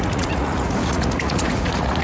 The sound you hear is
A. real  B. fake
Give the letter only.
B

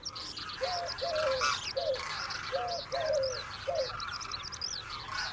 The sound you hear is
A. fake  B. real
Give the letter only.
B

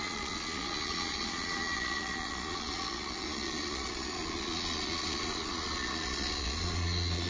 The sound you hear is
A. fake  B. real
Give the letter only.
A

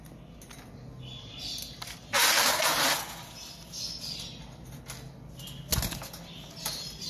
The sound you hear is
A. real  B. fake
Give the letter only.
A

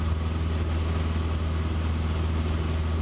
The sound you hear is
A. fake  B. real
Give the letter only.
B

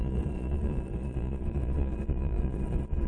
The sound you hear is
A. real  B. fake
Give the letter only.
B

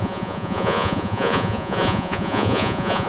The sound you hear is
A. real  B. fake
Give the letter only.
B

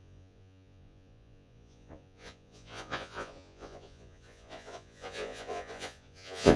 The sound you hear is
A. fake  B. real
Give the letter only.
A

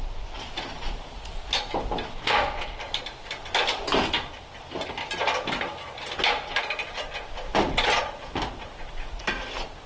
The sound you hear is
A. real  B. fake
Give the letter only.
A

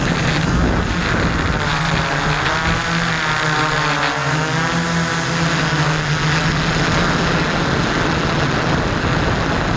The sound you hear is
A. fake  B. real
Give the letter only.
B